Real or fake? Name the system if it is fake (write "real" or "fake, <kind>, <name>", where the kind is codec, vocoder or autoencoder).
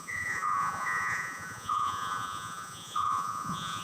fake, vocoder, Vocos